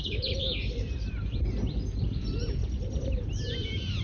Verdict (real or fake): fake